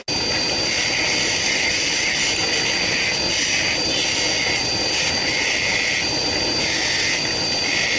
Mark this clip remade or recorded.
recorded